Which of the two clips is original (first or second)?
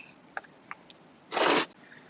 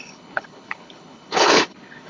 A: first